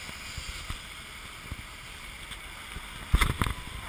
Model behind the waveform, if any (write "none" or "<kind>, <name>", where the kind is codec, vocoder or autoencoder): none